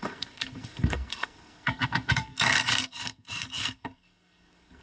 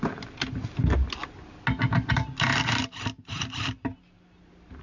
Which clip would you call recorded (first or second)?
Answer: second